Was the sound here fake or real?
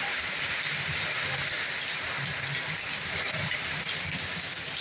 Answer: real